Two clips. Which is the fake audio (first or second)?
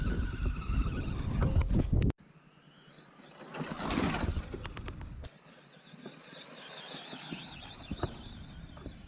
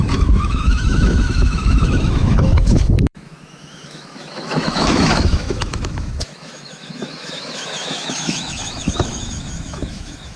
second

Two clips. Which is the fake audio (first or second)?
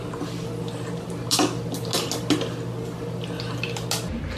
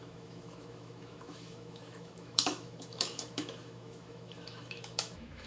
second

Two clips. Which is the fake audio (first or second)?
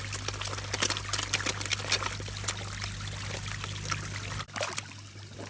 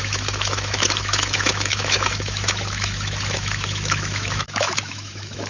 second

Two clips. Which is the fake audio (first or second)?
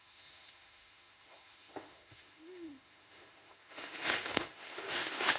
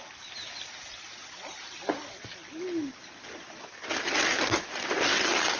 first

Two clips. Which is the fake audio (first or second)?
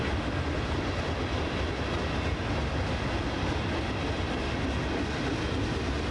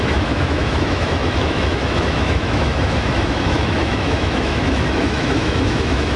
second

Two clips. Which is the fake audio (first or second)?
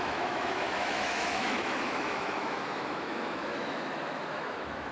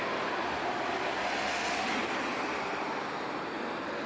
first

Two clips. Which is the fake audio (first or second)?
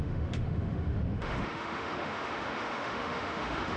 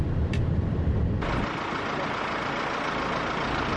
first